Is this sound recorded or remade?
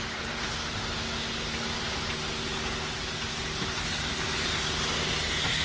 recorded